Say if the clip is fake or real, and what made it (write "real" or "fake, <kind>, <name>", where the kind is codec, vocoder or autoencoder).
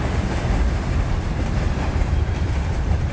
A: fake, vocoder, BigVGAN v2